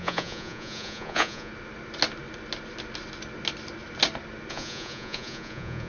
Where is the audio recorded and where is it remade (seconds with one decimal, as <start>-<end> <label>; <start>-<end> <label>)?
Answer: 0.0-1.5 remade; 1.5-4.5 recorded; 4.5-5.9 remade